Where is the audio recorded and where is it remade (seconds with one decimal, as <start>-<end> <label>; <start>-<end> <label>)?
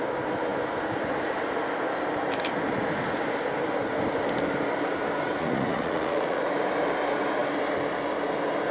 0.0-5.4 recorded; 5.4-6.4 remade; 6.4-8.7 recorded